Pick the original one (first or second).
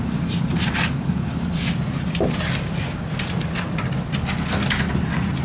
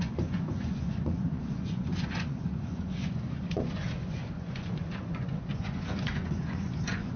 first